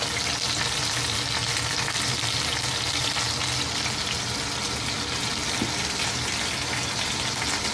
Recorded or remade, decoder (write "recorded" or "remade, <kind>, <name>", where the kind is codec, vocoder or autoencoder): recorded